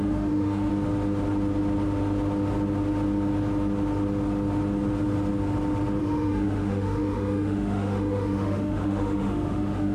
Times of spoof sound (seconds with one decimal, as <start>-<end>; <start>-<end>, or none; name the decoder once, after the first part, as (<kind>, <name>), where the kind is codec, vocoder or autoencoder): 0.0-0.7 (autoencoder, DAC-VAE); 6.0-9.9